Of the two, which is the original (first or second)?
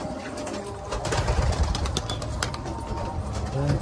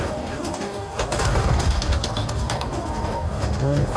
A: first